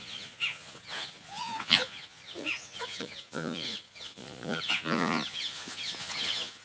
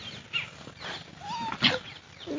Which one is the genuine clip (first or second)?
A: second